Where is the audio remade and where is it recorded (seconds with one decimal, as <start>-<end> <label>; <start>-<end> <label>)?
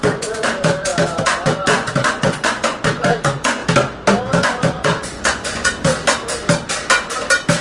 0.0-3.6 remade; 3.6-4.2 recorded; 4.2-5.9 remade; 5.9-7.6 recorded